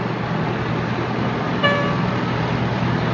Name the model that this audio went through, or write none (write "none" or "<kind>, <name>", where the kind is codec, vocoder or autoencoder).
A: none